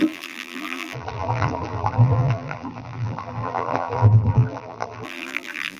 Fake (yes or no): yes